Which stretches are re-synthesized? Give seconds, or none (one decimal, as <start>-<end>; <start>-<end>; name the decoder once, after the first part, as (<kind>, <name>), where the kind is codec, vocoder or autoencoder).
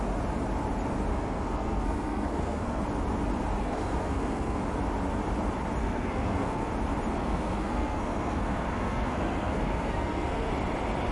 1.1-2.8 (codec, SNAC); 3.6-4.6; 5.8-6.7; 7.2-10.5